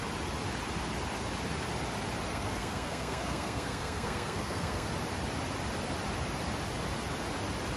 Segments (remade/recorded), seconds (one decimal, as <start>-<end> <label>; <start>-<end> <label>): 0.0-2.3 recorded; 2.3-4.9 remade; 4.9-7.8 recorded